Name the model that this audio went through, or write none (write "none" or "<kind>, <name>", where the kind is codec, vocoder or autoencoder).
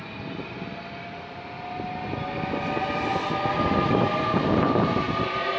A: none